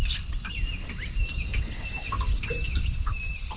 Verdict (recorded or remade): recorded